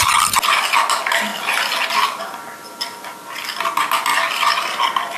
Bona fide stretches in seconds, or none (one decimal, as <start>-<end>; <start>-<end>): 0.0-5.2